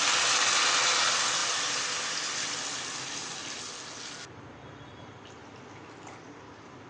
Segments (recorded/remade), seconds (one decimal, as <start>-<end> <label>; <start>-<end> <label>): 0.0-6.9 recorded